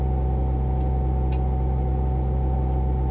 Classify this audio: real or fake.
real